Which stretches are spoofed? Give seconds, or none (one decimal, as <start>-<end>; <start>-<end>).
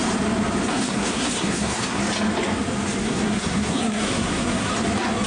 0.7-2.0; 3.0-4.7